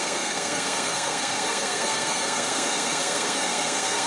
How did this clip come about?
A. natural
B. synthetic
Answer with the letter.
B